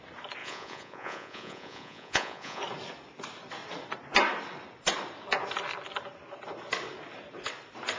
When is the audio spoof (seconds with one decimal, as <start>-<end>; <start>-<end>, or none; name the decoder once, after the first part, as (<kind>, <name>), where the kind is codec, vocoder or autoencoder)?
0.4-2.6 (vocoder, Vocos)